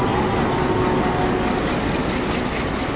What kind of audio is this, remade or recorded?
recorded